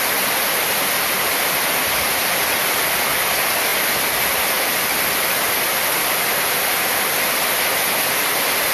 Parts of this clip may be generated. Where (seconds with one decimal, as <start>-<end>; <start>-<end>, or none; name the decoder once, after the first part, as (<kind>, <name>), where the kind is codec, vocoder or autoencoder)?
none